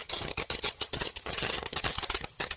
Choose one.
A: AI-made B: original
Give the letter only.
A